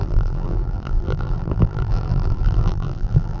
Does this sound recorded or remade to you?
remade